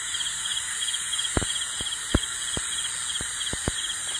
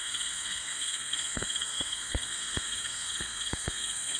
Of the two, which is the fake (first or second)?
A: second